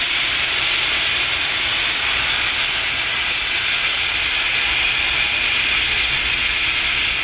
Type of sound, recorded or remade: recorded